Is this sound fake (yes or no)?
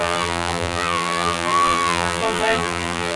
yes